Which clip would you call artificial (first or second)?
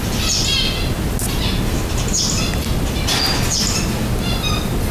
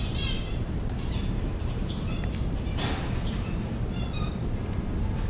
second